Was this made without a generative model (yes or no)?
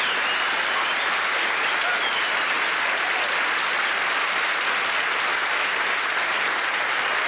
yes